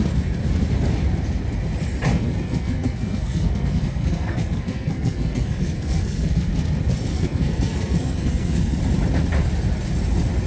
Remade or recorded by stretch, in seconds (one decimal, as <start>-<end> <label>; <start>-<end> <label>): 0.0-2.1 recorded; 2.1-6.5 remade; 6.5-7.1 recorded; 7.1-8.8 remade; 8.8-10.5 recorded